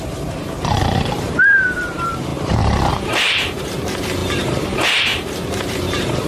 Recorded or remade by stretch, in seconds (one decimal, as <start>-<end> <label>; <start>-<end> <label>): 0.0-6.3 remade